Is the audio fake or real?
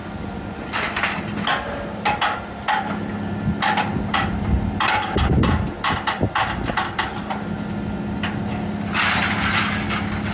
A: real